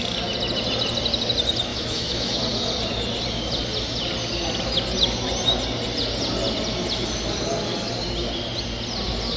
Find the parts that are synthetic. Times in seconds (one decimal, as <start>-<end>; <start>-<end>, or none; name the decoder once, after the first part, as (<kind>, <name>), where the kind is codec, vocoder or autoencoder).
1.7-2.4 (autoencoder, DAC-VAE)